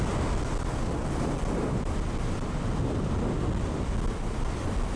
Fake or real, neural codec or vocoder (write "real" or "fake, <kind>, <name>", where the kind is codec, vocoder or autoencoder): real